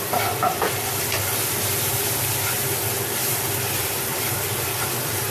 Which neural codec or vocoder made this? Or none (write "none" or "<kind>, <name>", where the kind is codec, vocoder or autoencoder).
vocoder, BigVGAN v2